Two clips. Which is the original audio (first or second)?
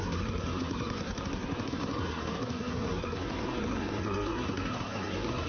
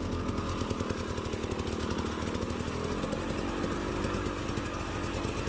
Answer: second